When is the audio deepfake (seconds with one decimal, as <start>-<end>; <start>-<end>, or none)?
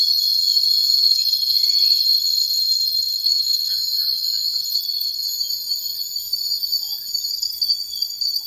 1.0-3.7; 4.6-5.2; 7.3-8.5